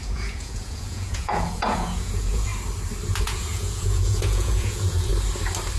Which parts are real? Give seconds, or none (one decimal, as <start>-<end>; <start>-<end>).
2.5-3.2; 5.1-5.8

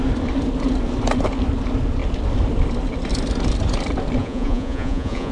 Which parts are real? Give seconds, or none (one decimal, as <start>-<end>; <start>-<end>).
0.0-4.2

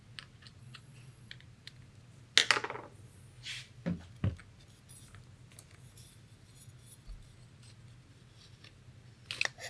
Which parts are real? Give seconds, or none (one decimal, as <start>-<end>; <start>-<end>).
0.0-0.6; 1.3-9.7